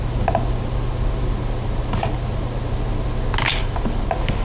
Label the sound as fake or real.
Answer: real